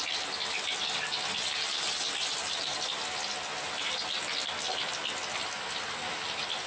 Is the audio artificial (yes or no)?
no